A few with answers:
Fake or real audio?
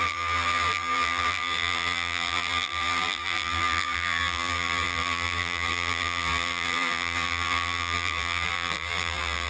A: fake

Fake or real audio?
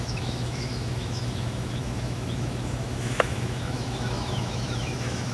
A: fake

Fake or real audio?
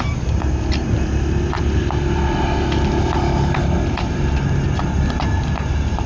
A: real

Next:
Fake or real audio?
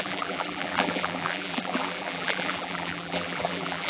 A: fake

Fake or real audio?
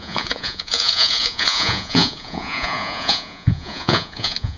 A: fake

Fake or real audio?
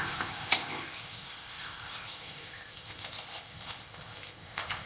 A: fake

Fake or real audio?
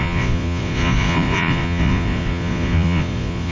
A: fake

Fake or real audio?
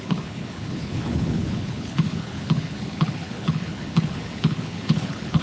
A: fake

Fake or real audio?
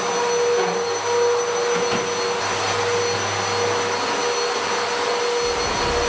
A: real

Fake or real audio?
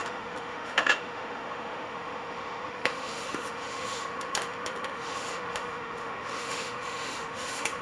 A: fake